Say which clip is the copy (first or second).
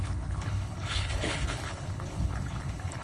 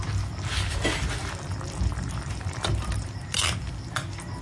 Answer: first